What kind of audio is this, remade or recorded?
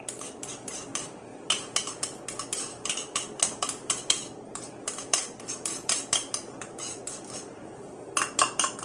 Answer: remade